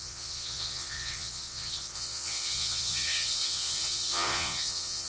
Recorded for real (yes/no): no